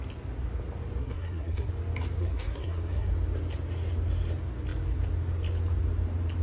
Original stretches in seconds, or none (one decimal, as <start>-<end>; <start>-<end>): 0.0-1.0; 1.7-2.2; 3.1-6.4